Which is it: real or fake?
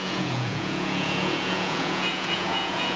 fake